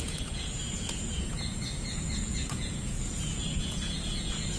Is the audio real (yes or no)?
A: no